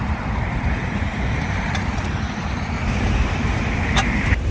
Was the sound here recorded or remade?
remade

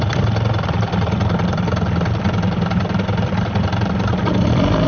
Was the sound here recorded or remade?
recorded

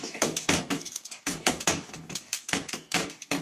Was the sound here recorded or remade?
remade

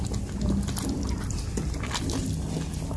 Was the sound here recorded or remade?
recorded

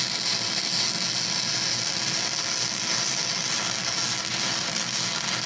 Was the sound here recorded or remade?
recorded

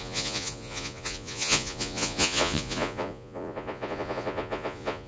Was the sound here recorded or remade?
remade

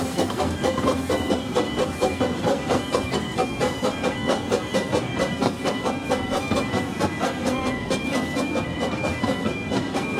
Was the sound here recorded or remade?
remade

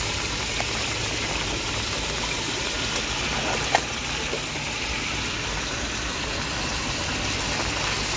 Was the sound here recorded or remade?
recorded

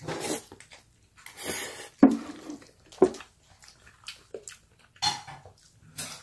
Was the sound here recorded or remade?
recorded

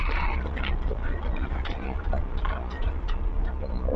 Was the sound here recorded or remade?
remade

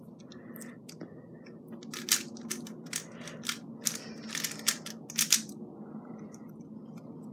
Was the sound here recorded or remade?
recorded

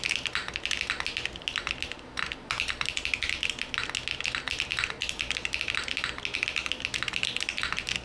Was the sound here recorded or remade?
recorded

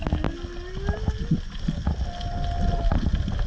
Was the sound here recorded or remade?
recorded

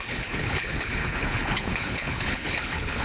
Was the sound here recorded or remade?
remade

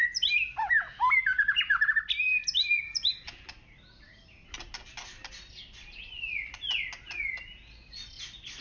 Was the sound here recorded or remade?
recorded